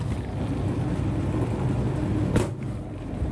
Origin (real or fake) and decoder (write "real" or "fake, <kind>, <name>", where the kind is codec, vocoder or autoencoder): real